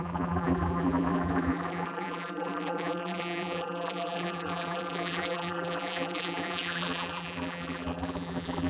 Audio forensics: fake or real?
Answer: fake